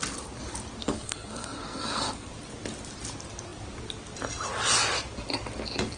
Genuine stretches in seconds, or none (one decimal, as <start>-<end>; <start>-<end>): 0.0-0.8; 2.3-6.0